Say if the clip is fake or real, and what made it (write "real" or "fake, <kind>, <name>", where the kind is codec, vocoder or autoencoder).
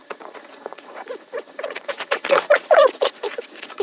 fake, vocoder, Vocos